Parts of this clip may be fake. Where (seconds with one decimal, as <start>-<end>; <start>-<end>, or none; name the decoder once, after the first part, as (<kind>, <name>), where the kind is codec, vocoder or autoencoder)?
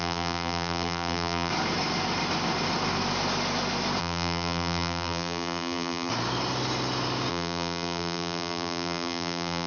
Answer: 0.0-1.5 (vocoder, BigVGAN v2); 4.0-6.1; 7.3-9.7